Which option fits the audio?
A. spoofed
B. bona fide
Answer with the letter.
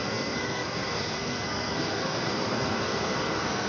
A